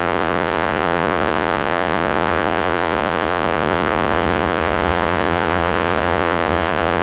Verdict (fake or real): fake